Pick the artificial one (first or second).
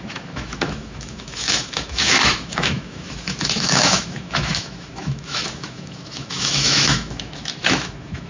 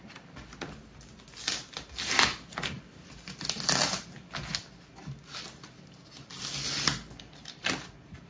first